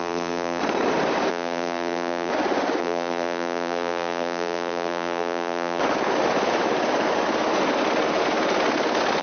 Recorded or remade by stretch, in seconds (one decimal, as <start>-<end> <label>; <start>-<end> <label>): 0.0-0.6 remade; 0.6-1.3 recorded; 1.3-2.3 remade; 2.3-2.8 recorded; 2.8-5.8 remade; 5.8-9.2 recorded